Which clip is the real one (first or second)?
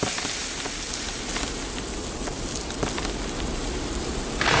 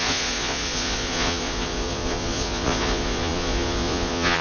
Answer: first